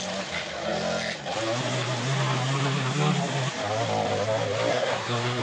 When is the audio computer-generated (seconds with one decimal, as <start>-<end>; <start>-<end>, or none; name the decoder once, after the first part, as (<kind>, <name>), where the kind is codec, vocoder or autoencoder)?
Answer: 4.7-5.4 (codec, SNAC)